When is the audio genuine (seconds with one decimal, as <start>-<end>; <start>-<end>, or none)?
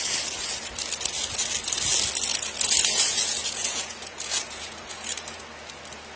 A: 0.0-2.3; 5.4-6.2